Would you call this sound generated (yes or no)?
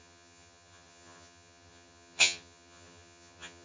yes